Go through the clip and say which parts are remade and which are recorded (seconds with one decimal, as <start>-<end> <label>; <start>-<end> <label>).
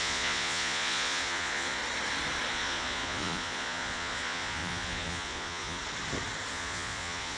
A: 0.0-1.8 remade; 1.8-2.5 recorded; 2.5-5.8 remade; 5.8-6.5 recorded; 6.5-7.4 remade